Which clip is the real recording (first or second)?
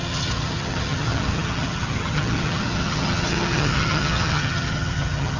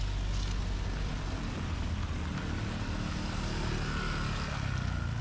second